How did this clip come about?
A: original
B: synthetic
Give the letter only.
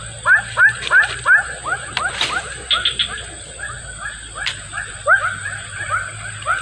A